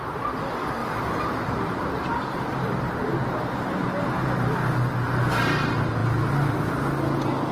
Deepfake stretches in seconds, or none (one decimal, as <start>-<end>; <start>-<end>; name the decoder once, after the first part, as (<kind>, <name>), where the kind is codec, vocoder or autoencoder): 0.8-4.7 (vocoder, BigVGAN v2)

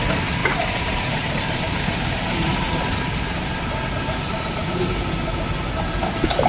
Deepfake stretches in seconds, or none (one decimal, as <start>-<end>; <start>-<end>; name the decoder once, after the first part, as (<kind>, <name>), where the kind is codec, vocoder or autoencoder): 0.4-3.5 (vocoder, BigVGAN v2)